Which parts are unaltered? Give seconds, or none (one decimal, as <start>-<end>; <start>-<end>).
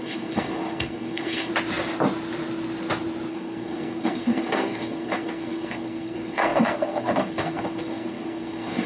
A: 1.5-3.3